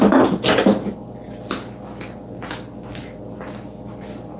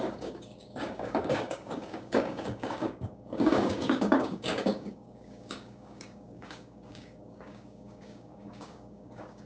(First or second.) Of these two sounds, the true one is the first